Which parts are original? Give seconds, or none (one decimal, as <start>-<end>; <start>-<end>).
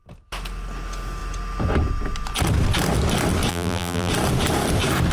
0.0-3.5; 4.1-5.1